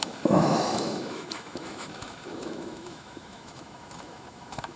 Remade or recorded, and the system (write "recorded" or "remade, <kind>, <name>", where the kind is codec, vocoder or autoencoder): remade, autoencoder, DAC-VAE